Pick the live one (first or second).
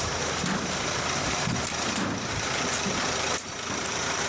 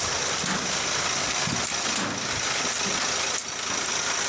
second